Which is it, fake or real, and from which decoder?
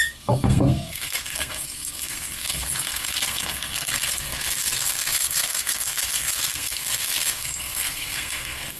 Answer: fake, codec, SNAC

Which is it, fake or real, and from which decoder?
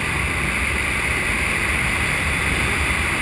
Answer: real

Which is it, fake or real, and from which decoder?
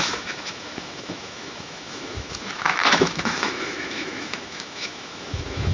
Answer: fake, autoencoder, DAC-VAE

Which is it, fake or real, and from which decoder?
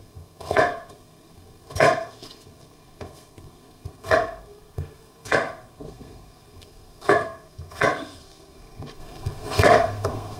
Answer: fake, codec, SNAC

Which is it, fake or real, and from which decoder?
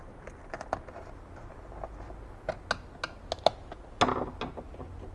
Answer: real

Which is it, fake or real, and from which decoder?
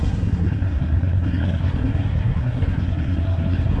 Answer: fake, codec, SNAC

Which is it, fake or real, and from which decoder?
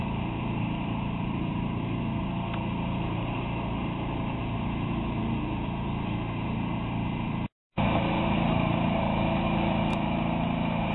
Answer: fake, vocoder, BigVGAN v2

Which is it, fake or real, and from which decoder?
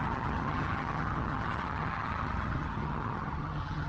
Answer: fake, vocoder, HiFi-GAN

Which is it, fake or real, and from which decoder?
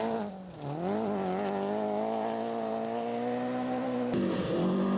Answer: real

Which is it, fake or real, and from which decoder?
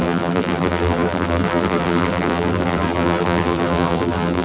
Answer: fake, vocoder, BigVGAN v2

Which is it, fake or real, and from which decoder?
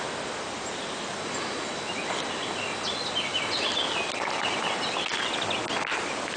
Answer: real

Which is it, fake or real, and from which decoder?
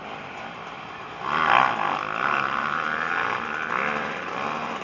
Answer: real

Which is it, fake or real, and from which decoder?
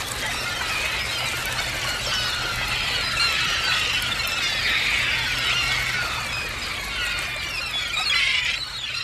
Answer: real